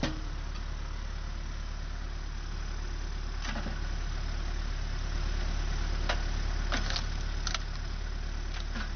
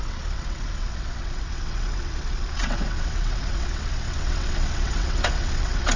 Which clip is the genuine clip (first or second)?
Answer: first